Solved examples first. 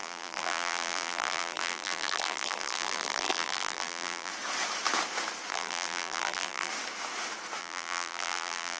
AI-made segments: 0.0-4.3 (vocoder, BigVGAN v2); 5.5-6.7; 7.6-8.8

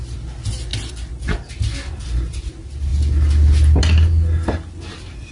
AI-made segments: none

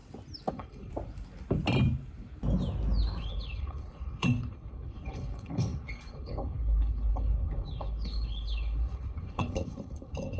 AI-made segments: 0.5-0.9 (codec, HILCodec); 3.2-10.4

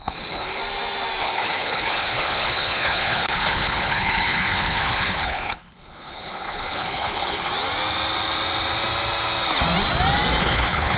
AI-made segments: 0.0-0.6 (codec, HILCodec); 1.2-7.5; 10.4-11.0

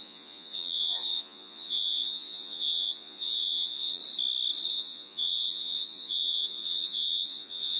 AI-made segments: 0.0-4.0 (vocoder, Vocos); 4.7-7.8